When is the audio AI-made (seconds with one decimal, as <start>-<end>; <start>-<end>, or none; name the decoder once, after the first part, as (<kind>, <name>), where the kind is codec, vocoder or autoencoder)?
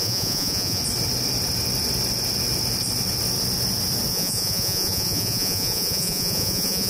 0.0-0.8 (vocoder, Vocos); 4.1-6.9